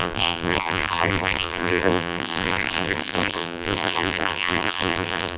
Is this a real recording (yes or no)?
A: no